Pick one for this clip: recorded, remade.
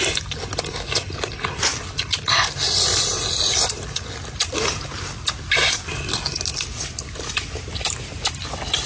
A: recorded